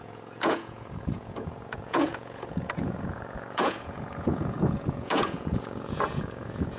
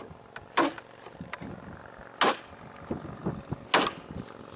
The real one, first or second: second